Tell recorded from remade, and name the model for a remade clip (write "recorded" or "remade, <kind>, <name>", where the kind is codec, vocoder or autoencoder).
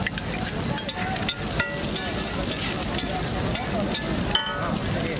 recorded